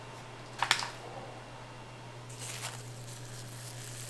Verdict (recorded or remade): recorded